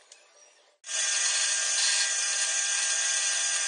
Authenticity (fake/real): real